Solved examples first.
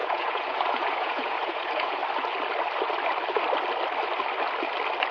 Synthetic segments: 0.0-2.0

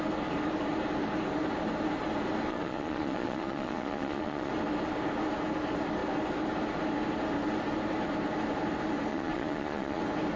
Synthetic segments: 2.5-4.5; 9.1-10.0

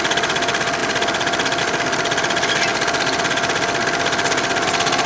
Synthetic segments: none

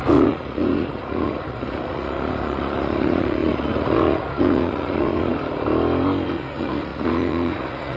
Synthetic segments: 0.0-5.3; 6.3-8.0

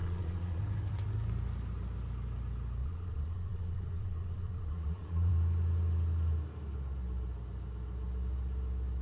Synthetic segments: 0.0-0.6; 2.8-5.3

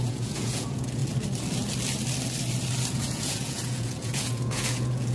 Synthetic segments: 0.0-1.0; 2.9-5.1